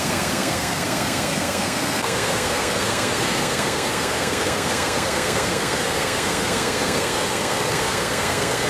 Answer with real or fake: fake